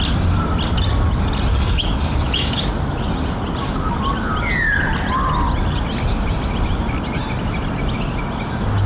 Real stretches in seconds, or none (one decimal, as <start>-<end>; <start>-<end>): 0.0-1.5; 2.7-8.9